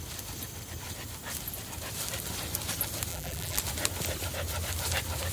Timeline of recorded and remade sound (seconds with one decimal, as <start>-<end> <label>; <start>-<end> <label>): 0.0-3.1 recorded; 3.1-3.6 remade; 3.6-5.3 recorded